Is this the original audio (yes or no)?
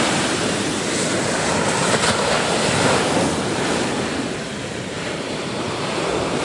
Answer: no